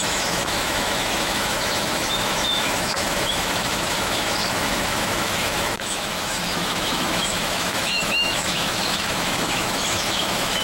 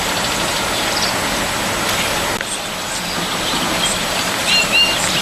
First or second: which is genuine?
second